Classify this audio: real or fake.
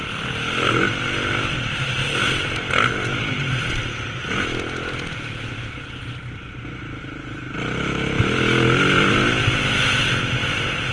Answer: real